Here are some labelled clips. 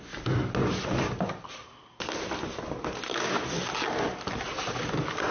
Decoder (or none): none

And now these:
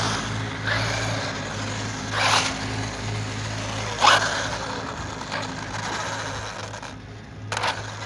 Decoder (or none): none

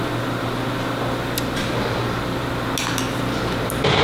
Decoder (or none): none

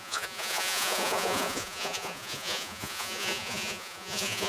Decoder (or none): vocoder, Vocos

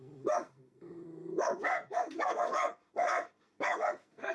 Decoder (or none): codec, SNAC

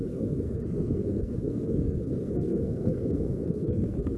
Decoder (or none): codec, SNAC